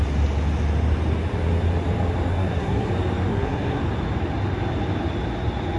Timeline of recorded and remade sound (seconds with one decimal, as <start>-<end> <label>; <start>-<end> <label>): 0.0-2.3 recorded; 2.3-2.9 remade; 2.9-3.3 recorded; 3.3-3.8 remade; 3.8-5.8 recorded